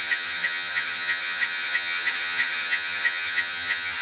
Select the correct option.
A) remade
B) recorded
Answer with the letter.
A